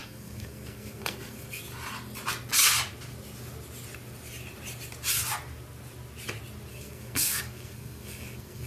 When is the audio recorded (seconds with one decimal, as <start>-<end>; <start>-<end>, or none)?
1.6-6.7